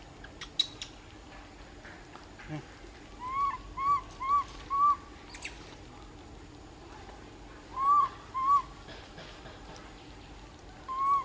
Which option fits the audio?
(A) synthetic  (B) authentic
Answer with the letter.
B